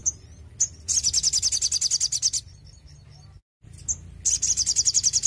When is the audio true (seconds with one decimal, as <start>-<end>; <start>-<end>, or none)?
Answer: 0.0-5.3